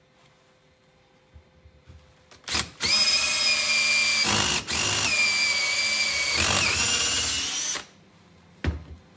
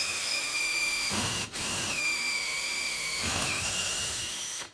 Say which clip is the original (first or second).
first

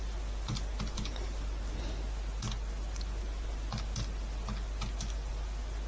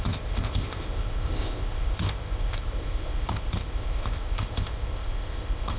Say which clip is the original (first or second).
first